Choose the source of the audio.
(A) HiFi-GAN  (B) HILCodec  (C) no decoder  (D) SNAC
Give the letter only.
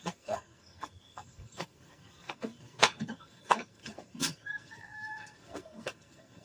D